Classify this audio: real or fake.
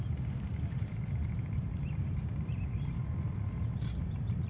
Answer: fake